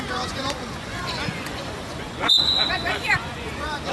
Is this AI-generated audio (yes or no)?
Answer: yes